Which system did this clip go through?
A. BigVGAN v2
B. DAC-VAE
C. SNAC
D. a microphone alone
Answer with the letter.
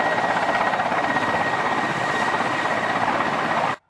D